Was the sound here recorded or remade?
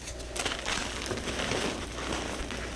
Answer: recorded